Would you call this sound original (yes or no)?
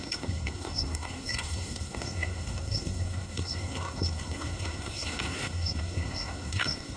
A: no